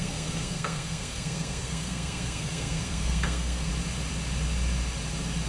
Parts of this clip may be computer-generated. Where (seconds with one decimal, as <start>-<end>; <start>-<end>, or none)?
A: 0.0-3.7